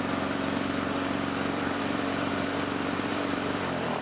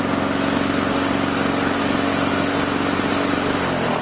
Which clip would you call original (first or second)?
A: second